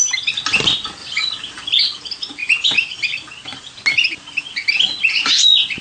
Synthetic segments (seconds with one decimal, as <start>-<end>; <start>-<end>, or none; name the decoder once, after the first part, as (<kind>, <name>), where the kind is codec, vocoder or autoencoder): none